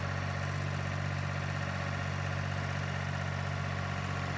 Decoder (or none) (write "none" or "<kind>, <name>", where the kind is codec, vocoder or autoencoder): none